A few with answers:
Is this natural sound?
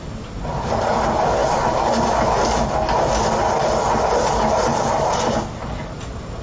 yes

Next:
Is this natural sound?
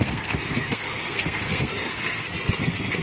no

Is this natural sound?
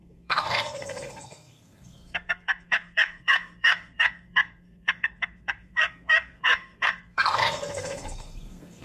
no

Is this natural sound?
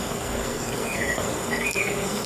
no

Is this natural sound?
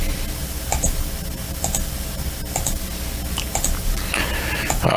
yes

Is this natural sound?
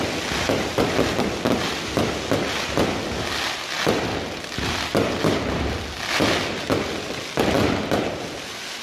yes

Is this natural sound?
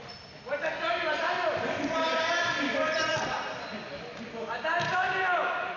yes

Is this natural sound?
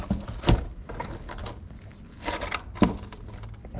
yes